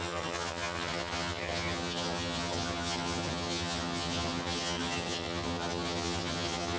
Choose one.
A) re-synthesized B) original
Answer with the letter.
A